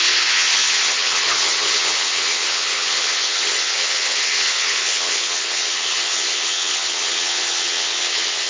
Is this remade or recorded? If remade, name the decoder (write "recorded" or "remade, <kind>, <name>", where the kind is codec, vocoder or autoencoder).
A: remade, vocoder, HiFi-GAN